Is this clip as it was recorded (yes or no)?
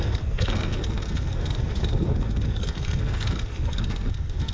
no